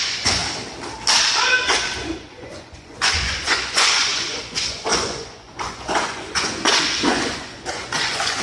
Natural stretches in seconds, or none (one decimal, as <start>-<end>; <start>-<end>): 0.4-1.6